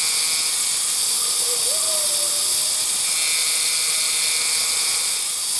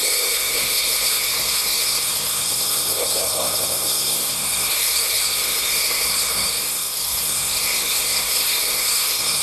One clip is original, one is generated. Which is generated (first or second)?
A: second